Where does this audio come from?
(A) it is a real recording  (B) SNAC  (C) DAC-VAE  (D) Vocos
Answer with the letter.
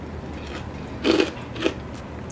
A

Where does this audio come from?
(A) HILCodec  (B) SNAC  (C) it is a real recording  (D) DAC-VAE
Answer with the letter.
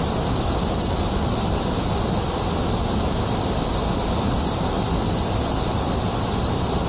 C